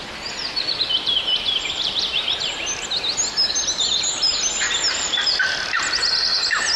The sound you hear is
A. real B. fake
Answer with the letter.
A